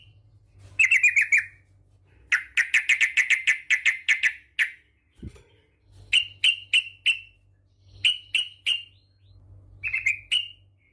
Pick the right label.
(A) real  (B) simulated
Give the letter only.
A